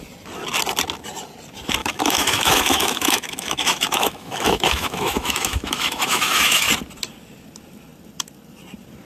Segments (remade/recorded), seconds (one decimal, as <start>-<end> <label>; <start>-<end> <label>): 0.0-1.8 recorded; 1.8-6.7 remade; 6.7-9.1 recorded